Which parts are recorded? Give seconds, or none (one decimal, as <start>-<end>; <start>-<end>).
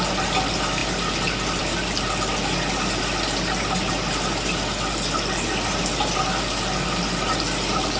0.0-8.0